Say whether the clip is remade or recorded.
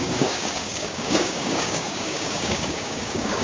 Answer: remade